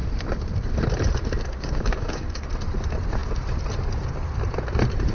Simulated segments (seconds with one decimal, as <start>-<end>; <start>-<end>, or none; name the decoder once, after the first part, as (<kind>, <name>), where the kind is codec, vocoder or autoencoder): 1.5-2.5 (codec, DAC)